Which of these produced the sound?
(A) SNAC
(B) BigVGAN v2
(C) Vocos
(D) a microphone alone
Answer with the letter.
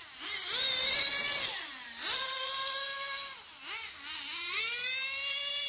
D